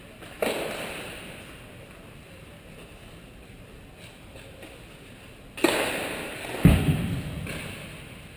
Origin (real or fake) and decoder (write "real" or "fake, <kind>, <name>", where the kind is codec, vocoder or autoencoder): real